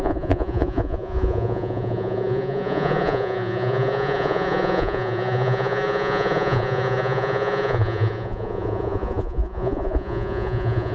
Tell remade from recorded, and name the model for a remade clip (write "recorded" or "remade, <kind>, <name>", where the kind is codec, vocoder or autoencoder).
remade, vocoder, Vocos